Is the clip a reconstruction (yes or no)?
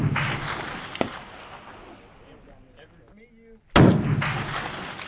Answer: no